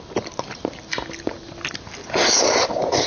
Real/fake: real